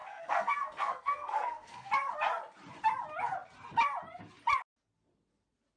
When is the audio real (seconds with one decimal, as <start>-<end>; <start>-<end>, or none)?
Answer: 1.9-5.8